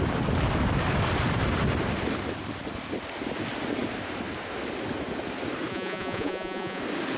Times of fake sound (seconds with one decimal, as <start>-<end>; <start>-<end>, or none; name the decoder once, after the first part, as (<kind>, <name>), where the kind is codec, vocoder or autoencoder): 5.7-6.8 (vocoder, Vocos)